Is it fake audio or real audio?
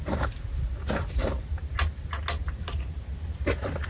real